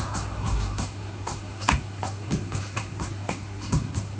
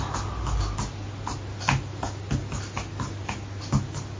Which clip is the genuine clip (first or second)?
second